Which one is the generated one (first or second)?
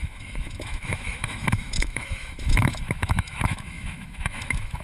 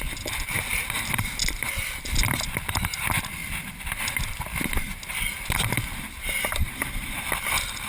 first